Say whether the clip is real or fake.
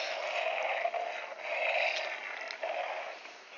real